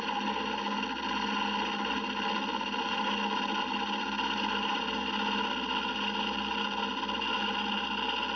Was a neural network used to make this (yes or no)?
no